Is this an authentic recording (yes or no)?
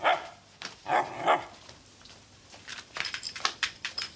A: no